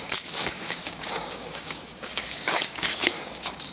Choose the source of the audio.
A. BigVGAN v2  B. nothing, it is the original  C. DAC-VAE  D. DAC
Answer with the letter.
D